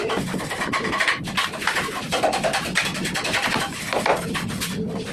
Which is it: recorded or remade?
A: recorded